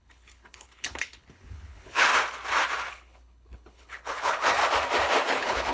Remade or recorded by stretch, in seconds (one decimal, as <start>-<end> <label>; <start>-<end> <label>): 0.0-2.1 remade; 2.1-2.9 recorded; 2.9-4.6 remade; 4.6-5.2 recorded; 5.2-5.7 remade